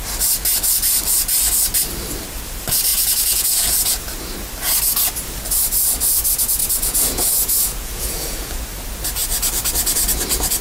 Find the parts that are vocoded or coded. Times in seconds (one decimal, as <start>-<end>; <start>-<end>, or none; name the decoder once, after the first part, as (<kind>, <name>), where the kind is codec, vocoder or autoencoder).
2.9-4.0 (vocoder, Vocos); 6.6-8.5